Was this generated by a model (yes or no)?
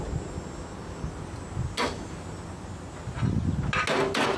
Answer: no